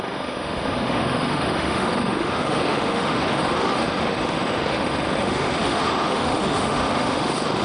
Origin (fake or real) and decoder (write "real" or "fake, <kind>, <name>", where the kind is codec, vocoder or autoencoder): fake, autoencoder, DAC-VAE